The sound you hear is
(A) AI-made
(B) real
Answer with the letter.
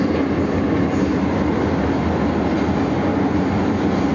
B